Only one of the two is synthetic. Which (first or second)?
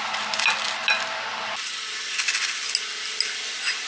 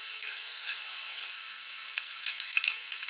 second